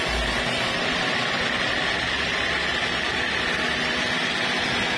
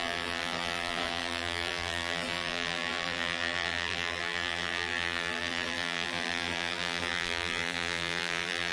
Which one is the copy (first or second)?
second